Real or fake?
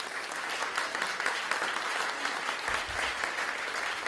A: real